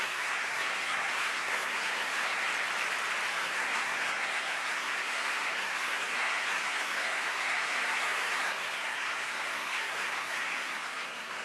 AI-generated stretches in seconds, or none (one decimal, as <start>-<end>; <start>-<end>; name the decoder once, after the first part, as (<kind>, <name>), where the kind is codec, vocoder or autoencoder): 0.0-2.5 (codec, SNAC); 3.3-11.4